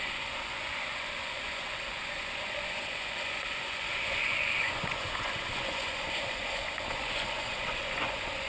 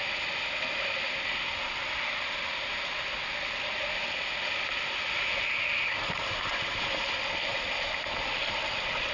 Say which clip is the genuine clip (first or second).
second